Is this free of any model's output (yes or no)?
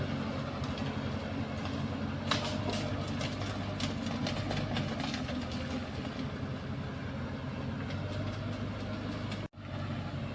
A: yes